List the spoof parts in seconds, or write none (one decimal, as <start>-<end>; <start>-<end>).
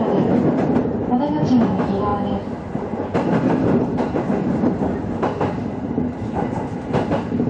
none